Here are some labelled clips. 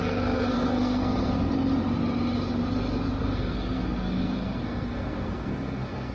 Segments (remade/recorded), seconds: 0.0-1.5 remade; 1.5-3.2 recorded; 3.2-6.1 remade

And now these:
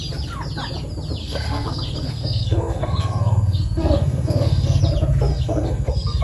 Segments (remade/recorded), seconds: 0.0-1.2 recorded; 1.2-4.8 remade; 4.8-5.3 recorded; 5.3-6.2 remade

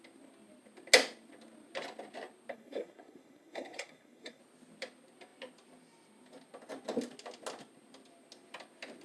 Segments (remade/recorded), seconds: 0.0-2.5 recorded; 2.5-4.4 remade; 4.4-9.0 recorded